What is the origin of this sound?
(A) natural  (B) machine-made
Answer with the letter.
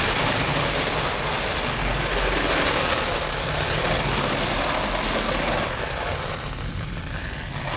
A